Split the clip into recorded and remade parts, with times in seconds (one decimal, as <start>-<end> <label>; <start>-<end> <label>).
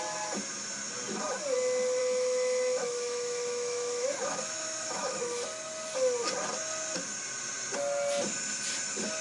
0.0-2.0 recorded; 2.0-5.2 remade; 5.2-9.2 recorded